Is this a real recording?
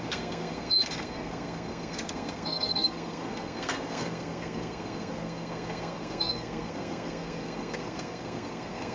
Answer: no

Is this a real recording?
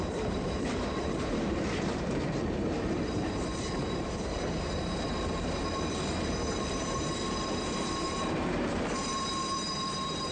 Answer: no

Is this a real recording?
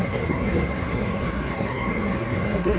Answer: no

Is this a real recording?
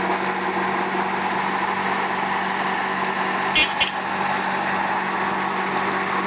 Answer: yes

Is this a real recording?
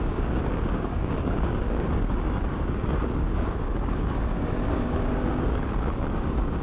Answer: no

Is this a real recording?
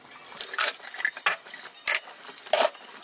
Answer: yes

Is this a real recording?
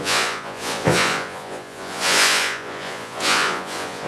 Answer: no